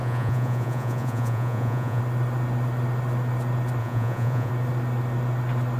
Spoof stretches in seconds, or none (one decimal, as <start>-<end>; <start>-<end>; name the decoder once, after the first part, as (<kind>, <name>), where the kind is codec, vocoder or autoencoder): 0.0-2.0 (vocoder, Vocos); 3.8-4.5

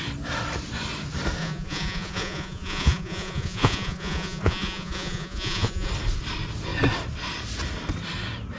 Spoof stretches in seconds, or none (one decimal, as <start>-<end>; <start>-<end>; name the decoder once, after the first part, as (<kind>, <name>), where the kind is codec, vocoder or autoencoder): 1.4-5.9 (vocoder, Vocos)

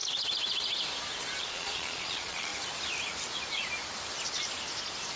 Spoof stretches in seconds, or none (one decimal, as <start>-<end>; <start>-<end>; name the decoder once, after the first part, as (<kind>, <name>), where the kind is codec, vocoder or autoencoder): 1.4-2.5 (vocoder, Vocos)

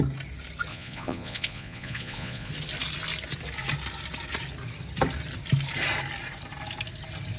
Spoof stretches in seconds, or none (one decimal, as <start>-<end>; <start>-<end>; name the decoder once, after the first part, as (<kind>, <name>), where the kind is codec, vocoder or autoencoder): 0.7-2.5 (vocoder, Vocos)

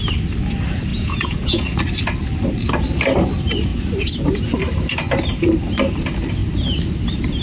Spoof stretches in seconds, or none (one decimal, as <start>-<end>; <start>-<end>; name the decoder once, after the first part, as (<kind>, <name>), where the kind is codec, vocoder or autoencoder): 0.9-1.8 (vocoder, Vocos)

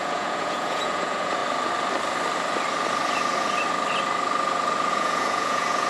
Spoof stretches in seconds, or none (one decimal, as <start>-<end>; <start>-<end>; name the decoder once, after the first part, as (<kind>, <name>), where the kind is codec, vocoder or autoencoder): 0.0-1.4 (vocoder, Vocos); 4.9-5.9

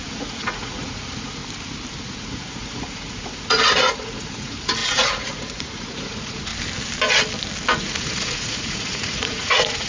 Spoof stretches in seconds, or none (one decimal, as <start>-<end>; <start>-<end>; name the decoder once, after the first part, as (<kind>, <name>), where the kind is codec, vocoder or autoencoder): 0.0-1.4 (vocoder, Vocos); 2.0-6.5; 7.8-9.9